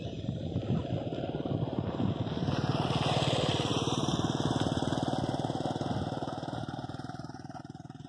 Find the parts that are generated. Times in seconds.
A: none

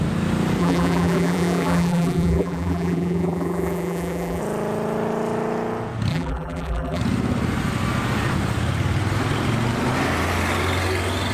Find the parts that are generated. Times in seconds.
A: 0.6-4.4 (vocoder, BigVGAN v2); 6.1-7.0

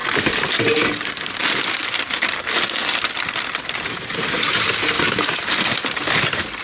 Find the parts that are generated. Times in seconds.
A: 0.0-6.6 (vocoder, BigVGAN v2)

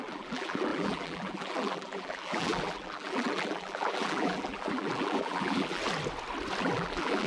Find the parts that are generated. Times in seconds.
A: 0.0-5.8 (vocoder, BigVGAN v2); 6.6-7.3

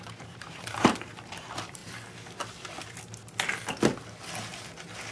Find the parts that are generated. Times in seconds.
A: 0.0-1.8 (vocoder, BigVGAN v2)